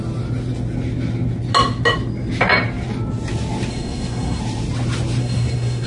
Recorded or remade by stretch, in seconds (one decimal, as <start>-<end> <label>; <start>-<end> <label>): 0.0-3.7 recorded; 3.7-4.4 remade; 4.4-5.2 recorded; 5.2-5.9 remade